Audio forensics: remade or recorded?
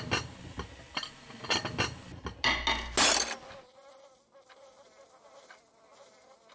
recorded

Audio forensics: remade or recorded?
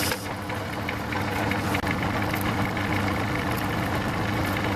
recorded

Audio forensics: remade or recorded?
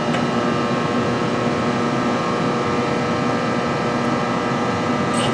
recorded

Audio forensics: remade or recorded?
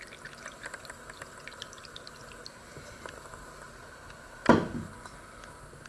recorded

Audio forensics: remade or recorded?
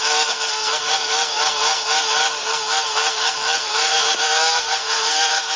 remade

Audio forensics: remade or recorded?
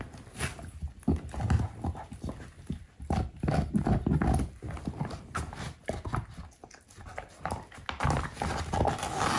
recorded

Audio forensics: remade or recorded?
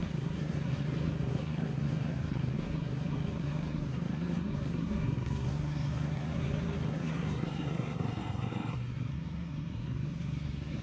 remade